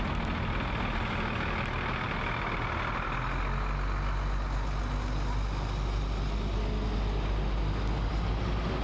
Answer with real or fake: real